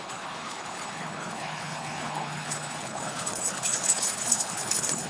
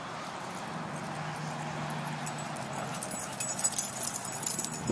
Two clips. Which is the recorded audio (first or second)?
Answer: second